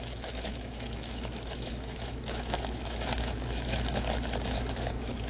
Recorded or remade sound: remade